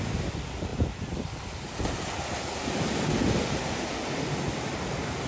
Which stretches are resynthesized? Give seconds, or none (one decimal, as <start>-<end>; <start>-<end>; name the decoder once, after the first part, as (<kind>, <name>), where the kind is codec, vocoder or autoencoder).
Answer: 0.7-3.9 (vocoder, BigVGAN v2)